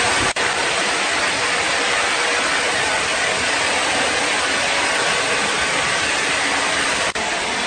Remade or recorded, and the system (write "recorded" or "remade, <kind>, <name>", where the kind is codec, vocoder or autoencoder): recorded